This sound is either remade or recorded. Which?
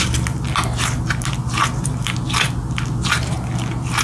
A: recorded